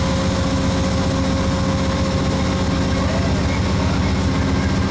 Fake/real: real